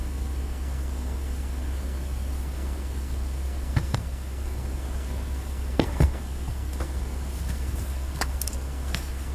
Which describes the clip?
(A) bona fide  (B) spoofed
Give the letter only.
B